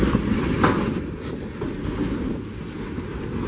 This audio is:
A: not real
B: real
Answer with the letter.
B